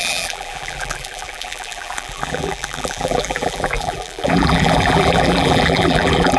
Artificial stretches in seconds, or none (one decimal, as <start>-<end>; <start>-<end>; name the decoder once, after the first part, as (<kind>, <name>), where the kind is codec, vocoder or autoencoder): 0.0-6.4 (vocoder, BigVGAN v2)